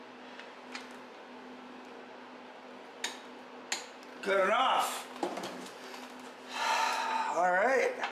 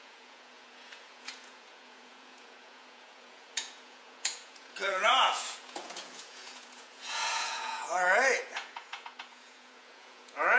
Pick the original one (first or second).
first